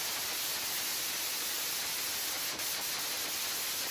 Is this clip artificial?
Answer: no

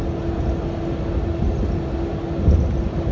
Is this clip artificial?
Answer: no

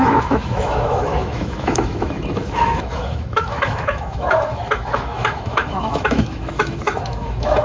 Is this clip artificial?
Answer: yes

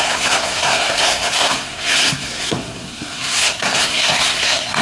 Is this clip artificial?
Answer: yes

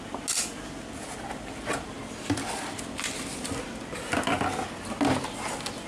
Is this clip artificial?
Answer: no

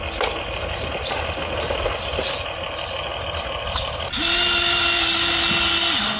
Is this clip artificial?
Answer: no